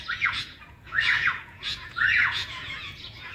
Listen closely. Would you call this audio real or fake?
fake